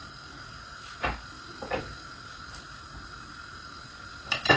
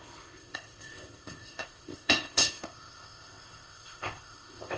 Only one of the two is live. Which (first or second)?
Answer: first